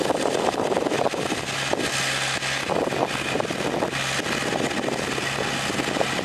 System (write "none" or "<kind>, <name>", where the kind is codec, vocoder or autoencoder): none